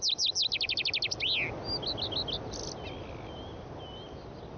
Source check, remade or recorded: recorded